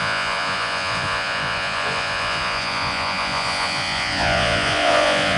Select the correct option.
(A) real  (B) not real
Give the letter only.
B